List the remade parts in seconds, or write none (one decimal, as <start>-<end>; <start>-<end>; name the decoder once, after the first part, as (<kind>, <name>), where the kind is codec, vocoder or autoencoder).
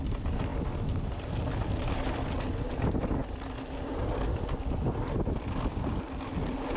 none